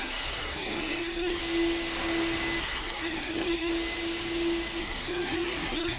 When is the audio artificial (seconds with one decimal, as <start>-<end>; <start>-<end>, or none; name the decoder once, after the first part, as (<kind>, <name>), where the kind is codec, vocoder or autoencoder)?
0.0-1.4 (codec, SNAC); 2.6-3.7; 4.8-6.0

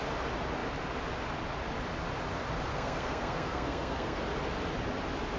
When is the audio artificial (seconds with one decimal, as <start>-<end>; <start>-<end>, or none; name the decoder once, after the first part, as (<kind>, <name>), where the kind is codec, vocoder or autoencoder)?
2.7-4.2 (codec, SNAC)

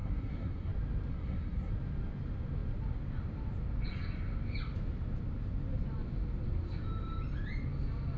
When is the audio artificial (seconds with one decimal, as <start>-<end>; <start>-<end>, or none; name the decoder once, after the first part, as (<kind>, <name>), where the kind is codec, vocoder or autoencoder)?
0.0-0.7 (codec, SNAC); 1.1-1.7

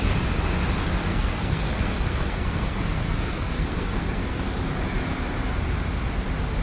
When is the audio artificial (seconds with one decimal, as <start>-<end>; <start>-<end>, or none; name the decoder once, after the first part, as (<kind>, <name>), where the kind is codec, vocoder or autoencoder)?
1.1-4.4 (codec, SNAC)